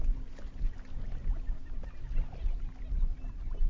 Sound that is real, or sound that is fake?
real